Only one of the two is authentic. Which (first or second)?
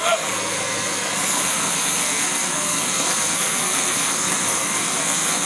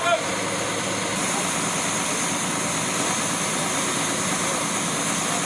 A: second